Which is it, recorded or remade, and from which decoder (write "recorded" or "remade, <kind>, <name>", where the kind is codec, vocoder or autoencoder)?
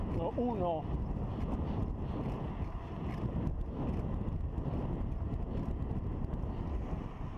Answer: recorded